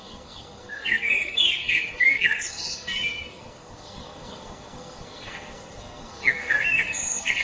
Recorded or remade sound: remade